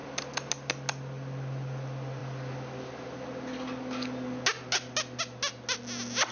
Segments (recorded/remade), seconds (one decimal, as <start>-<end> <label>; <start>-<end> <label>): 0.0-6.3 recorded